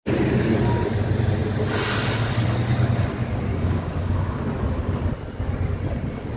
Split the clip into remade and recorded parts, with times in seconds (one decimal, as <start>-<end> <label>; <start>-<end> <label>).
0.0-3.5 recorded; 3.5-4.4 remade; 4.4-6.4 recorded